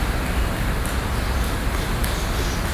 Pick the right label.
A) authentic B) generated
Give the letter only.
A